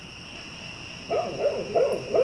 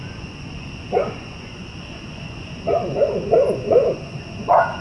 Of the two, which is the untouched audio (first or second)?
first